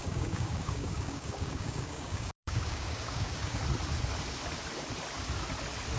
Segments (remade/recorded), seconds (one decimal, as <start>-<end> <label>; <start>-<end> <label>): 0.0-3.6 remade; 3.6-6.0 recorded